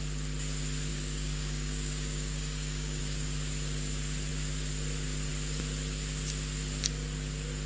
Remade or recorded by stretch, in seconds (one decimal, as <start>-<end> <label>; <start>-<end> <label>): 0.0-0.9 recorded; 0.9-3.0 remade; 3.0-7.7 recorded